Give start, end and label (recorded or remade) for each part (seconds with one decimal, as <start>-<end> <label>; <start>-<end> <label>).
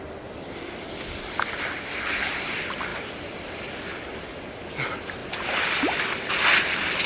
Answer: 0.0-7.1 recorded